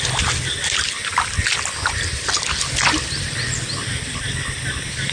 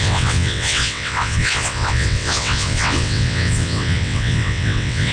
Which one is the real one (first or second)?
first